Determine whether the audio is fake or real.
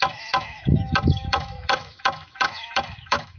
fake